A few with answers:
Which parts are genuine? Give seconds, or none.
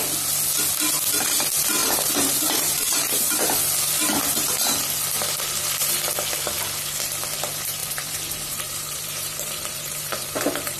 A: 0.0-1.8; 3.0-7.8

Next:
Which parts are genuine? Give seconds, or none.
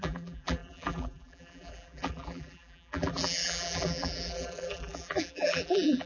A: none